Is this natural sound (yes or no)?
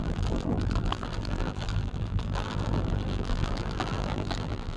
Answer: no